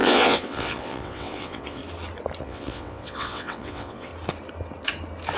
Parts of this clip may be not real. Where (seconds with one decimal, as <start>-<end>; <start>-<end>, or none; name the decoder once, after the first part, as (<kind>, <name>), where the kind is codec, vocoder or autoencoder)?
0.0-1.8 (vocoder, WaveNeXt); 2.4-4.1